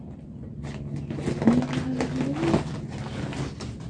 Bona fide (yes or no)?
yes